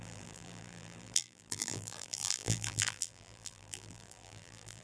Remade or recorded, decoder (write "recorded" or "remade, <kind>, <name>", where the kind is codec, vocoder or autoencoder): remade, vocoder, BigVGAN v2